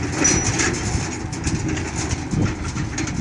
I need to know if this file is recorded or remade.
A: recorded